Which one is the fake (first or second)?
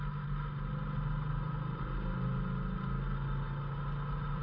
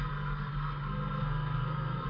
second